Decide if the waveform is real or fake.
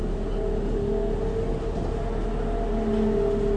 real